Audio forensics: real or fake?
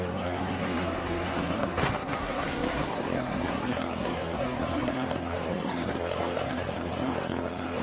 fake